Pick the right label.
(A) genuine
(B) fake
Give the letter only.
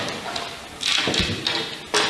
A